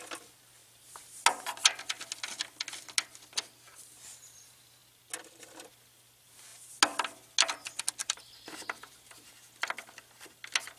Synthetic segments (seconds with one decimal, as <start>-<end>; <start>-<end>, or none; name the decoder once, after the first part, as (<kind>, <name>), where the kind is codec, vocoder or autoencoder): 0.6-1.2 (vocoder, BigVGAN v2); 8.0-9.3